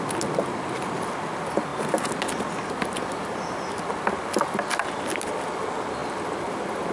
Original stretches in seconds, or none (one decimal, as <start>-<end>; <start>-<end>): 0.0-6.9